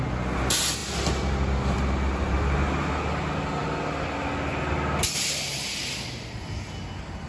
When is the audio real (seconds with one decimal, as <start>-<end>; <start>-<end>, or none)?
0.0-7.3